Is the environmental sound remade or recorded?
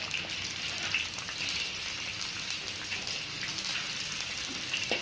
recorded